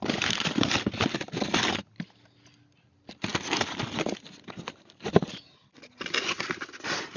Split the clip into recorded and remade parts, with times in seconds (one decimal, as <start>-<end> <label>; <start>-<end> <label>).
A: 0.0-7.2 recorded